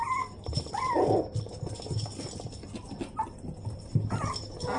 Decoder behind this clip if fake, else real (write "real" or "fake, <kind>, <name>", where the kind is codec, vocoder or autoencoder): real